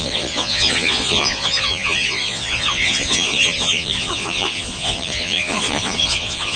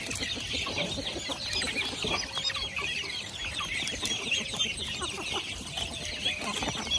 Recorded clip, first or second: second